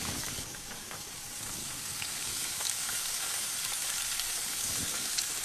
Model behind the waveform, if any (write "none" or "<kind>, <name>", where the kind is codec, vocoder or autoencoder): codec, DAC